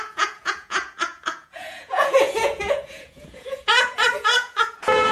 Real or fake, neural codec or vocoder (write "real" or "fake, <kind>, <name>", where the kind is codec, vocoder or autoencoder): fake, vocoder, Vocos